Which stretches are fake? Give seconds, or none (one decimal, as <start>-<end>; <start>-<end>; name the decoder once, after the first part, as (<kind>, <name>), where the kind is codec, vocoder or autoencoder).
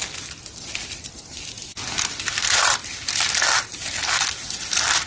none